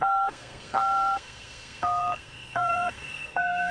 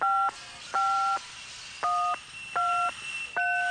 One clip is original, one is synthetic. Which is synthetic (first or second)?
first